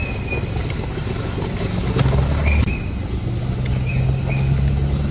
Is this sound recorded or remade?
recorded